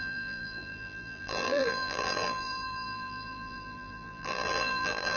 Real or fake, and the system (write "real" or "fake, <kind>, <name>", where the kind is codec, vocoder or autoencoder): fake, vocoder, BigVGAN v2